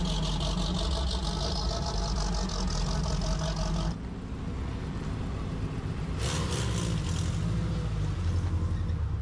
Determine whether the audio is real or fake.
real